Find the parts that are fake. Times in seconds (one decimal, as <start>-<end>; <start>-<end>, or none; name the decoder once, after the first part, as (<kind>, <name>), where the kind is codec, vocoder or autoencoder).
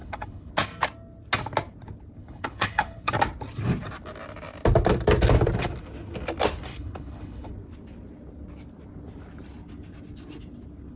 0.0-0.5 (codec, HILCodec); 2.2-3.1; 6.7-7.5